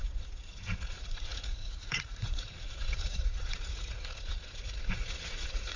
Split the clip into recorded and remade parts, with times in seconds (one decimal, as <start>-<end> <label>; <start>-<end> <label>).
0.0-5.8 remade